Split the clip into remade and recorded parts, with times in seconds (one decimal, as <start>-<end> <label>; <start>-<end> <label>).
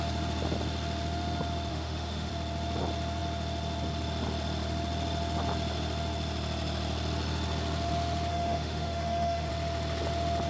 0.0-1.7 recorded; 1.7-2.3 remade; 2.3-8.3 recorded; 8.3-9.5 remade; 9.5-10.5 recorded